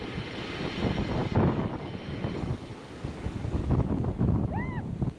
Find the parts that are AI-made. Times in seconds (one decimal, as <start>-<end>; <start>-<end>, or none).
1.2-1.9; 2.5-3.9